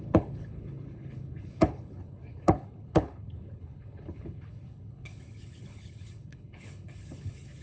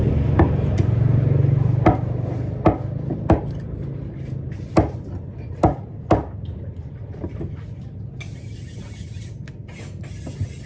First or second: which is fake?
first